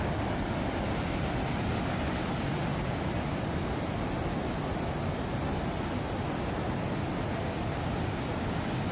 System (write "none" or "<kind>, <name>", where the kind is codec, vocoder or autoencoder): none